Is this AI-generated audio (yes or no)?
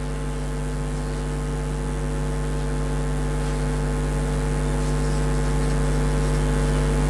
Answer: no